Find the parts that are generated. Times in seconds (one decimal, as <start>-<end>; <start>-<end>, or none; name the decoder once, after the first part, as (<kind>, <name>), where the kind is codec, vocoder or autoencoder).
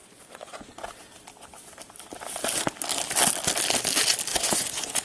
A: 0.0-0.6 (vocoder, Vocos); 4.3-5.0